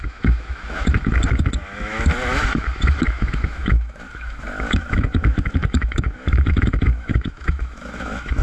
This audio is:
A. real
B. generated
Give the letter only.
B